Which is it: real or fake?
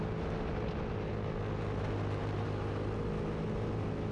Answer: real